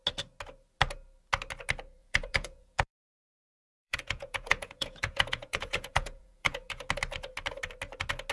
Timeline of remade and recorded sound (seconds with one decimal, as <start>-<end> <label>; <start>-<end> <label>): 0.0-2.0 recorded; 2.0-3.1 remade; 3.1-3.8 recorded; 3.8-6.9 remade; 6.9-8.3 recorded